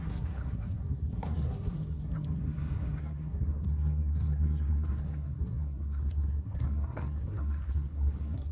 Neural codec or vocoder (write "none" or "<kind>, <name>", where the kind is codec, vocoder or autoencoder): codec, SNAC